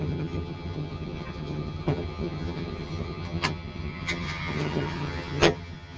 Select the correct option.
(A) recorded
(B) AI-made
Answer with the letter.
B